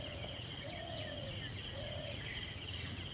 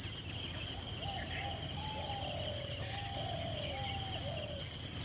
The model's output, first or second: first